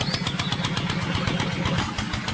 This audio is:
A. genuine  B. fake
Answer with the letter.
A